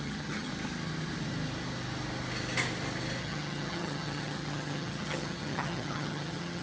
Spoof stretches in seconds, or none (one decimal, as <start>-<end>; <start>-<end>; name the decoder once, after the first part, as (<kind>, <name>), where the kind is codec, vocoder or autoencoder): 0.0-0.5 (vocoder, HiFi-GAN); 3.2-6.6